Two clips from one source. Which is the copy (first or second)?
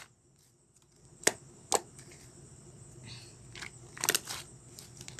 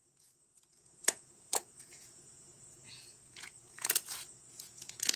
second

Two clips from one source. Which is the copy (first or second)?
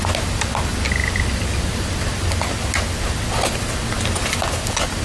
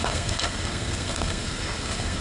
second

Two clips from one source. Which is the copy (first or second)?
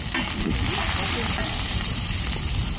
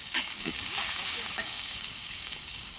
second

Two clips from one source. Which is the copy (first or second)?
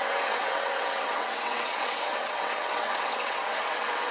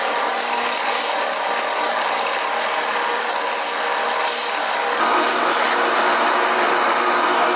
first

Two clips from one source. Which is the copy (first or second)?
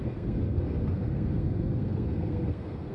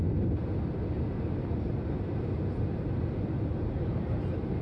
first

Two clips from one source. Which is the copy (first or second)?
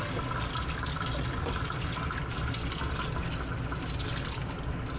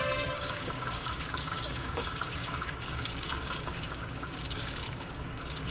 second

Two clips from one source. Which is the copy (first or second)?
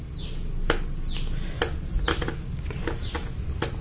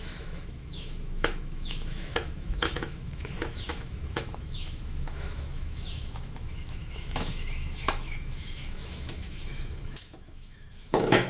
second